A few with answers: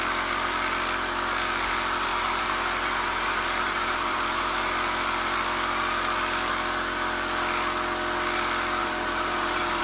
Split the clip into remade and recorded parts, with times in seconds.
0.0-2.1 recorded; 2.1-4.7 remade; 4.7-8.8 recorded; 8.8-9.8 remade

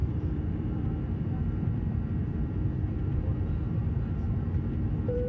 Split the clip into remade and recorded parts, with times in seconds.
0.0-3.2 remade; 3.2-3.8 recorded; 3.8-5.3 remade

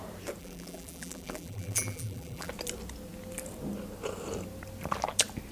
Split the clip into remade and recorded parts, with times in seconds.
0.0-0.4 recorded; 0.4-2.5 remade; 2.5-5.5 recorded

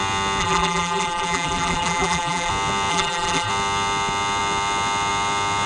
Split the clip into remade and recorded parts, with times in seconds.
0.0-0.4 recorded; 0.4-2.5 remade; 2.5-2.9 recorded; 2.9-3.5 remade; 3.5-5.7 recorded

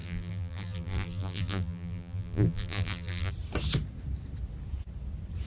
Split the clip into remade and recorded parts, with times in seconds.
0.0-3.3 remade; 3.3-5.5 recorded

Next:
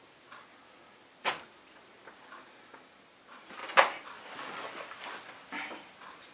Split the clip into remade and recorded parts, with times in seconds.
0.0-6.3 recorded

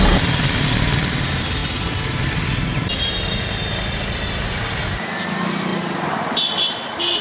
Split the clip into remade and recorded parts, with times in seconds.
0.0-5.7 remade; 5.7-7.2 recorded

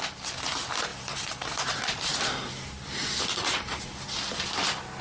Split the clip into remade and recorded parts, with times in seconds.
0.0-0.9 recorded; 0.9-2.2 remade; 2.2-3.0 recorded; 3.0-3.8 remade; 3.8-5.0 recorded